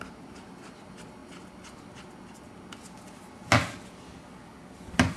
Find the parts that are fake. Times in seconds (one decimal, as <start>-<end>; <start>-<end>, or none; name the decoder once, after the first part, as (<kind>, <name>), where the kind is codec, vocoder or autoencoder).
none